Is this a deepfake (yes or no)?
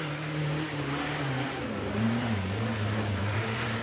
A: yes